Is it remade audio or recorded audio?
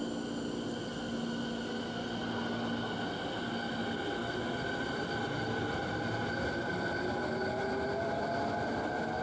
recorded